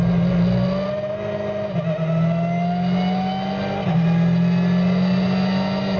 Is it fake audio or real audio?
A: real